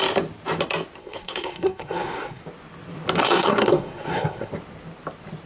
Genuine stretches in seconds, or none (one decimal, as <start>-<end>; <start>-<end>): 0.0-1.0; 2.4-3.2; 4.5-5.5